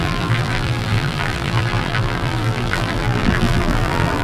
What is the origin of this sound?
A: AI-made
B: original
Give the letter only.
A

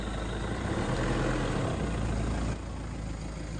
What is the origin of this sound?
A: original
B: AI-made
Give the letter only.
A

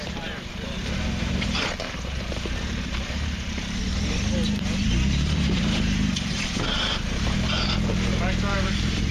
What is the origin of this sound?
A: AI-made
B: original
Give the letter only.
A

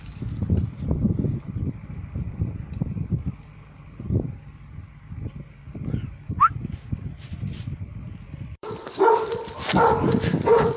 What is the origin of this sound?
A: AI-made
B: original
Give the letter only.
A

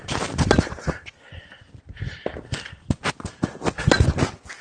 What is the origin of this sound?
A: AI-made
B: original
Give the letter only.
B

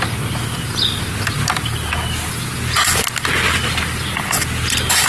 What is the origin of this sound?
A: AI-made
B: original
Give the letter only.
B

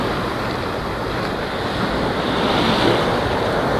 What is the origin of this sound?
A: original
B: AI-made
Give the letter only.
A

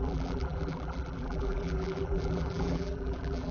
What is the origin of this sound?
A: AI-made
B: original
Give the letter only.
A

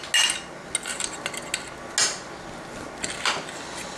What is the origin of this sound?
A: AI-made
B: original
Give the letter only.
B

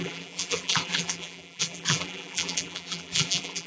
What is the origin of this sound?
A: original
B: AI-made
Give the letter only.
B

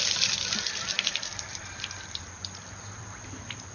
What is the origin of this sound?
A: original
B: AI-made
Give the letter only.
B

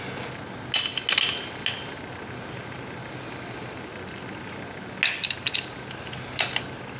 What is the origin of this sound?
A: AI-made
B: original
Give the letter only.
B